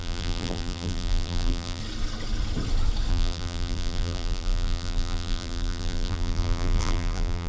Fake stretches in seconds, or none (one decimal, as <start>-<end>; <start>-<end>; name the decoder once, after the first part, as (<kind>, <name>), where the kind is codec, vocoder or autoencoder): 0.0-1.8 (vocoder, BigVGAN v2); 3.1-7.5